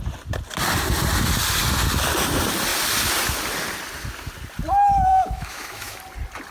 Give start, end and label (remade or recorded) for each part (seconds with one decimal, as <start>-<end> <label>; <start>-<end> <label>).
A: 0.0-5.1 recorded; 5.1-6.0 remade; 6.0-6.5 recorded